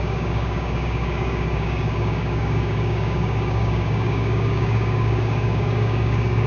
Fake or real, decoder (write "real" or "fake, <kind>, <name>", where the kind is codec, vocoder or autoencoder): fake, codec, DAC